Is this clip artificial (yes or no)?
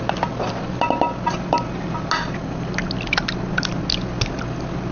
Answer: no